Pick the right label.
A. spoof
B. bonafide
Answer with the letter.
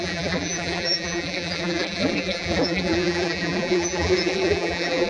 A